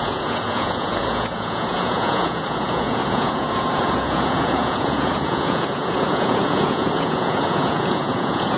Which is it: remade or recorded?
remade